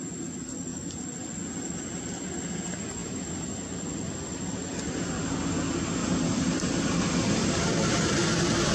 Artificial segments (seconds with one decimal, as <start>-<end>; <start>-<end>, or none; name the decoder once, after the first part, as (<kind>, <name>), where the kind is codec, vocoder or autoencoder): 0.7-1.3 (vocoder, BigVGAN v2); 3.0-3.6; 6.0-8.7